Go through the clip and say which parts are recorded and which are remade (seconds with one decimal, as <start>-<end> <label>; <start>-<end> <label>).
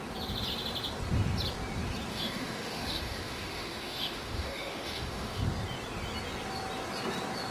0.0-2.1 recorded; 2.1-5.4 remade; 5.4-7.5 recorded